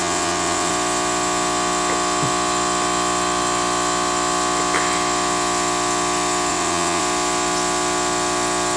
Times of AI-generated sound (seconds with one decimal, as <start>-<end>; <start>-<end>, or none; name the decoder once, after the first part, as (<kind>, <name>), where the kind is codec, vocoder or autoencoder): 0.0-0.7 (vocoder, WaveNeXt); 6.5-7.0